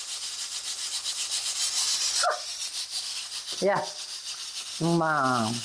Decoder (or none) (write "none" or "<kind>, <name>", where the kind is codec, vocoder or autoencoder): none